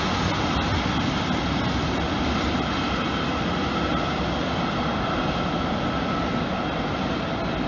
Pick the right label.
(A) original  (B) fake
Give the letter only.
A